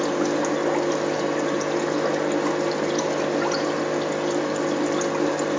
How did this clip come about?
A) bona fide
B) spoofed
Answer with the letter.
A